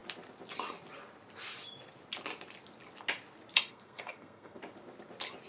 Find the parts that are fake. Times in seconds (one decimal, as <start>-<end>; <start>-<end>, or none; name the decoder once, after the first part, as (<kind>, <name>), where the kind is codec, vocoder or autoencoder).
3.7-4.6 (codec, SNAC)